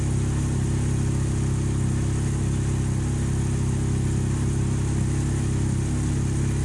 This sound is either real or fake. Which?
real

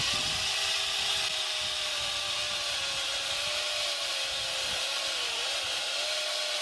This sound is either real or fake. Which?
real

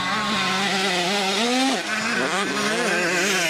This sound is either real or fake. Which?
real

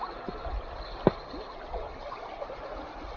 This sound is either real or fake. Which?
real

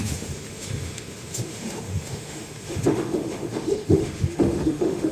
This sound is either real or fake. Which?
fake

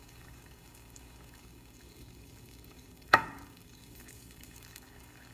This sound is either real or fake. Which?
fake